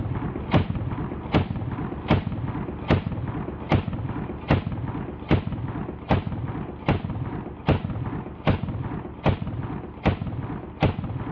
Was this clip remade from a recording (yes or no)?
no